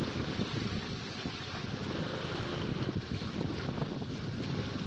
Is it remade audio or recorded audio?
recorded